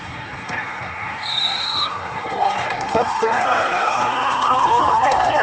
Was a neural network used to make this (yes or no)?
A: yes